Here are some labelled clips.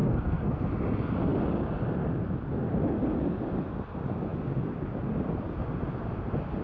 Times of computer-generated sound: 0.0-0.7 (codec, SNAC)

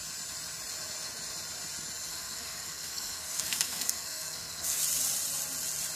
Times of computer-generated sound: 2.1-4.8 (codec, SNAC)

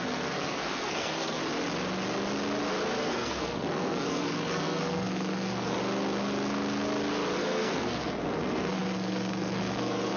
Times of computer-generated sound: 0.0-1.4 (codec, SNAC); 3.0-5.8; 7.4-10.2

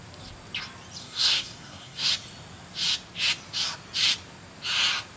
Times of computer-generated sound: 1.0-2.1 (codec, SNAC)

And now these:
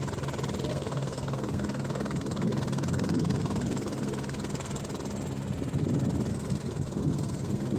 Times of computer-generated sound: 0.7-4.8 (codec, SNAC); 6.3-7.8